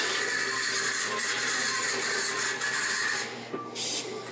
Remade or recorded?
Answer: recorded